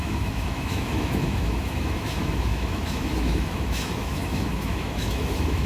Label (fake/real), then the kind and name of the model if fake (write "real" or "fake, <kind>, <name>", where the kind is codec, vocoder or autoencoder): fake, autoencoder, DAC-VAE